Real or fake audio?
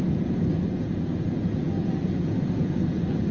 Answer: fake